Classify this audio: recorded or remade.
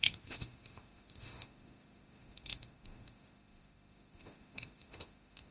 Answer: remade